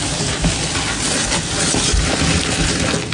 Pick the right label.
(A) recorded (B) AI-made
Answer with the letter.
A